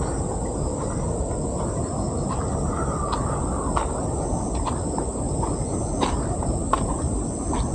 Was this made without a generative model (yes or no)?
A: yes